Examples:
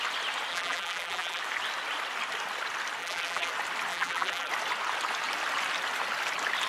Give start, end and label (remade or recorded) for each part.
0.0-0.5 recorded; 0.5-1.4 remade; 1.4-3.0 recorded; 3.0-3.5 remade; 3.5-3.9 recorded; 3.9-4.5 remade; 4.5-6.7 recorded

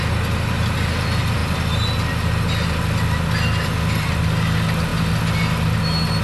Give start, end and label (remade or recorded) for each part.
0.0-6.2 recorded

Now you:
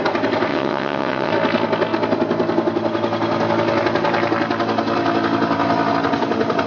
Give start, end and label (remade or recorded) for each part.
0.0-0.5 recorded; 0.5-1.3 remade; 1.3-6.7 recorded

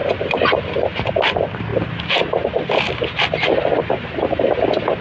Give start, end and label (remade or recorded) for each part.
0.0-5.0 recorded

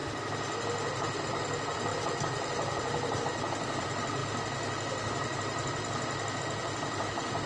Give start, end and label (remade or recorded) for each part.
0.0-1.2 recorded; 1.2-4.2 remade; 4.2-6.4 recorded; 6.4-7.5 remade

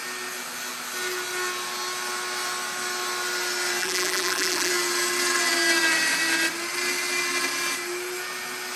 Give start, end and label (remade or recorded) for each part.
0.0-3.8 recorded; 3.8-4.7 remade; 4.7-8.8 recorded

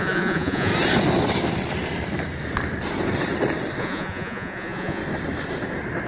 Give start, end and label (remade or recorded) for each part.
0.0-0.7 remade; 0.7-3.8 recorded; 3.8-5.0 remade; 5.0-6.1 recorded

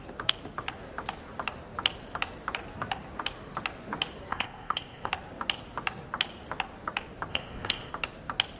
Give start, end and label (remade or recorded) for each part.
0.0-4.3 recorded; 4.3-5.1 remade; 5.1-7.3 recorded; 7.3-7.9 remade; 7.9-8.6 recorded